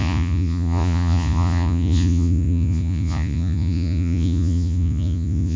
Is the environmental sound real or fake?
fake